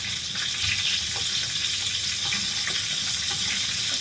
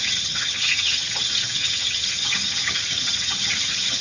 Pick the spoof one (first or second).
second